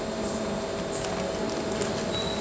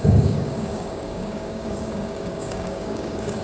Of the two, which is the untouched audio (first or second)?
first